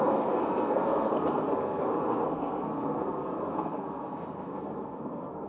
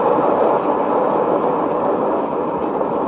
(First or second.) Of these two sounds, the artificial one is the first